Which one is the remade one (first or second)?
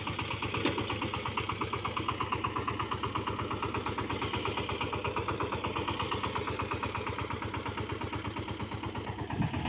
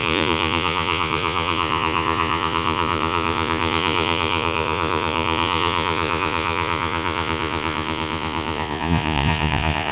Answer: second